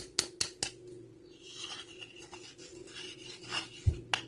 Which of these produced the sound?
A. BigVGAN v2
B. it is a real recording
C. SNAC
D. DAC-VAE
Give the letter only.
B